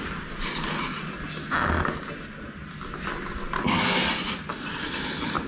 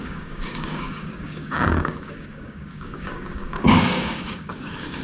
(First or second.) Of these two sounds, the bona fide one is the first